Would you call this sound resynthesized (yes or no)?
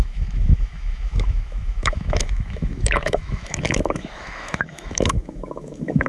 yes